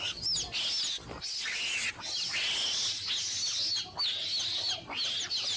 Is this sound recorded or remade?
recorded